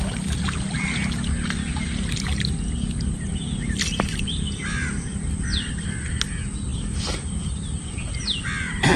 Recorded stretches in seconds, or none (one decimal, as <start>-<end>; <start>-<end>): 0.0-9.0